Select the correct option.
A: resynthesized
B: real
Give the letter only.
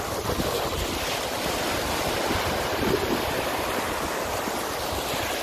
B